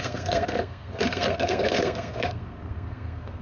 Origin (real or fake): fake